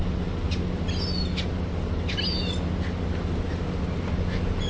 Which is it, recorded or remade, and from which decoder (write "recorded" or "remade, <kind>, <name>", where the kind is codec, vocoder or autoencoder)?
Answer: recorded